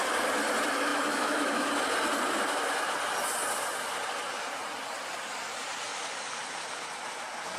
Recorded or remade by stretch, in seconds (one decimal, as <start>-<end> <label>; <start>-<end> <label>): 0.0-0.9 recorded; 0.9-1.7 remade; 1.7-7.6 recorded